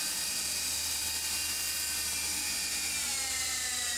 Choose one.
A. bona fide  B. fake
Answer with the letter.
A